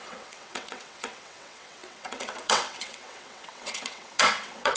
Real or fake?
fake